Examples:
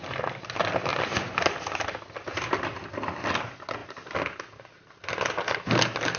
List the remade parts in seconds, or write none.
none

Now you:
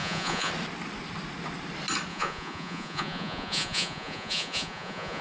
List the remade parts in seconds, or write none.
0.0-0.5 (vocoder, Vocos); 2.1-5.2

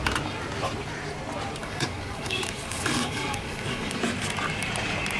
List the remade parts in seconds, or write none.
1.6-4.0 (codec, DAC)

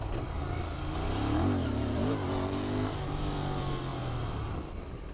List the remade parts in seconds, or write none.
none